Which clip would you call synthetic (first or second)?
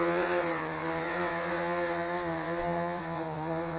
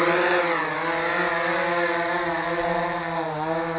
first